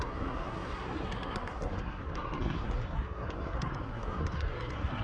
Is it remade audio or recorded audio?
remade